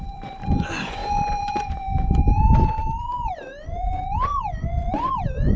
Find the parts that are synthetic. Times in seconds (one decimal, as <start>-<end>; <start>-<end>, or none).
0.0-5.6